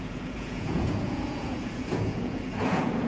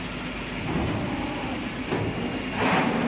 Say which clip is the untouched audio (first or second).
second